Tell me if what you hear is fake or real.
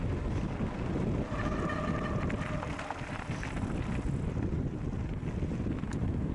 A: real